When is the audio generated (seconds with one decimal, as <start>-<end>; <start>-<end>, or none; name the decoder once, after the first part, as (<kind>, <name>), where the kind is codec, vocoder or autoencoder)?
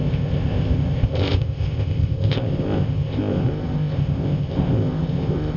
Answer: 0.0-5.6 (codec, ZipCodec)